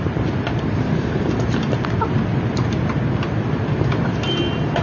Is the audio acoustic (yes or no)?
yes